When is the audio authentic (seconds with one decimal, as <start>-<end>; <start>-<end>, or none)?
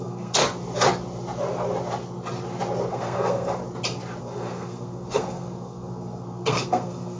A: 0.4-2.9; 3.6-4.2